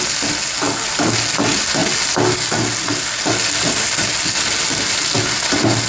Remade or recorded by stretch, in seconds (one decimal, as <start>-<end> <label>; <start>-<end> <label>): 0.0-5.9 recorded